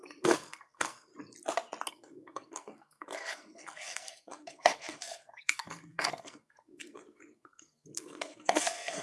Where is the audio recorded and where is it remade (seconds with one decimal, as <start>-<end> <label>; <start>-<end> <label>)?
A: 0.0-1.1 remade; 1.1-1.9 recorded; 1.9-9.0 remade